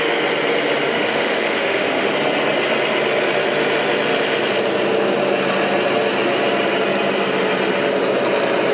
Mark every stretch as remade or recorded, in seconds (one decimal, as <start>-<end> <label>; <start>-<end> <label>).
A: 0.0-0.9 recorded; 0.9-2.1 remade; 2.1-8.7 recorded